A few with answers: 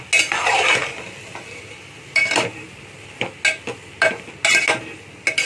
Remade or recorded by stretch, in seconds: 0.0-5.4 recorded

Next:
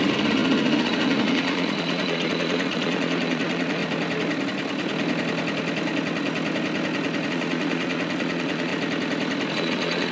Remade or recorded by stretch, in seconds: 0.0-3.8 remade; 3.8-7.3 recorded; 7.3-8.7 remade; 8.7-9.5 recorded; 9.5-10.1 remade

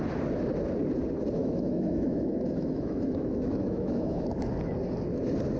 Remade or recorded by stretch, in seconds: 0.0-1.4 recorded; 1.4-4.5 remade; 4.5-5.6 recorded

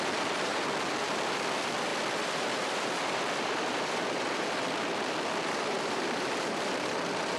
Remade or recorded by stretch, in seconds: 0.0-7.4 remade

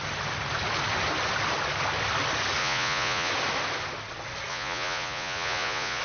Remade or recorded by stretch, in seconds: 0.0-2.6 recorded; 2.6-3.3 remade; 3.3-4.5 recorded; 4.5-6.0 remade

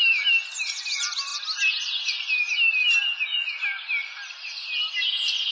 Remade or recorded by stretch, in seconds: 0.0-5.5 recorded